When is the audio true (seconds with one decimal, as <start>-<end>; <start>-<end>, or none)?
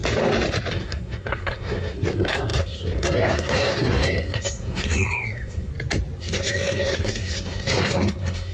0.0-0.7; 5.7-6.2